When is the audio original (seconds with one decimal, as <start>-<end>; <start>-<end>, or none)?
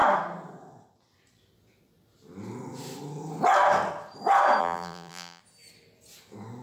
0.0-4.6; 5.4-6.6